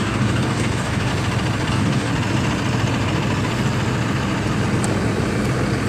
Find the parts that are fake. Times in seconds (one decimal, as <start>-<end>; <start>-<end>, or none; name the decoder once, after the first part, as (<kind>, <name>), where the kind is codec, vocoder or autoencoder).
0.0-1.1 (codec, DAC); 1.7-2.1